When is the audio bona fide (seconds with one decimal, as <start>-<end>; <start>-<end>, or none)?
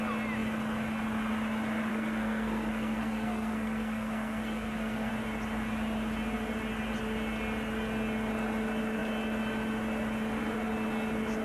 0.0-1.9; 5.1-11.4